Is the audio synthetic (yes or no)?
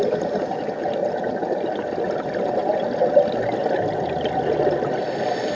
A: no